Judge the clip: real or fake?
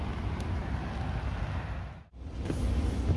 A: real